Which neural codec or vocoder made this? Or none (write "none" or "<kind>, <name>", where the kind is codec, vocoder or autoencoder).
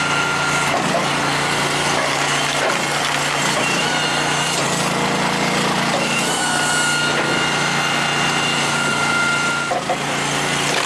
none